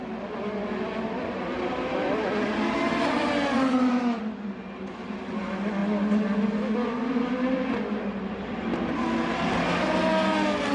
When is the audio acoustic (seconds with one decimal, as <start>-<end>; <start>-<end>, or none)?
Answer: 0.0-10.7